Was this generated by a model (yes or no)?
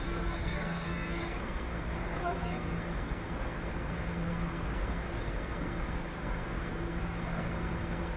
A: yes